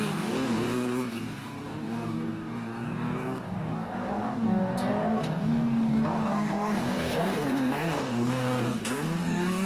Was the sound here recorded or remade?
remade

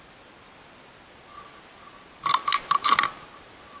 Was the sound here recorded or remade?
recorded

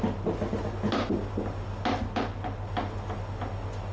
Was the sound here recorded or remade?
recorded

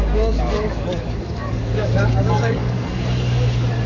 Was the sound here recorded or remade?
remade